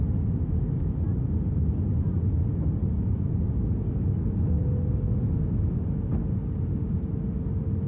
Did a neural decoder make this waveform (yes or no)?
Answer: no